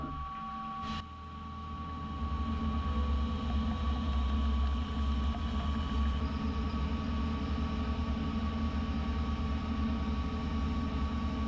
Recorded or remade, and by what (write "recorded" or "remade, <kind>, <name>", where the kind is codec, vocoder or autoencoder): recorded